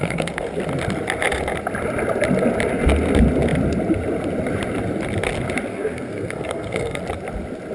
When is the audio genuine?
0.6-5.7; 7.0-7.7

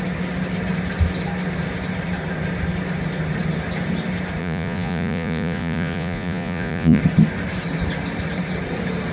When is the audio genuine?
0.0-4.4; 7.0-9.1